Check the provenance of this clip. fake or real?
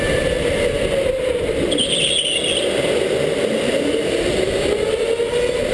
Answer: real